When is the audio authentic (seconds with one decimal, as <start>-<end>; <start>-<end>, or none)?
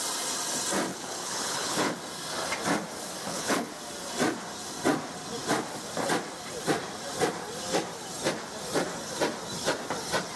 0.0-0.9; 2.0-3.2; 3.7-10.4